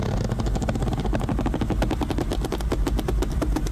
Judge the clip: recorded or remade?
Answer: recorded